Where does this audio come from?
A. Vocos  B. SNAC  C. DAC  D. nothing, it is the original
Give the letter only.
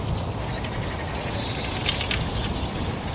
D